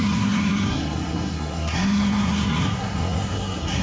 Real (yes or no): no